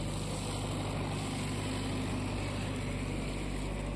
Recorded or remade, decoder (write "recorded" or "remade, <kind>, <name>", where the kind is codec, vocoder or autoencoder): recorded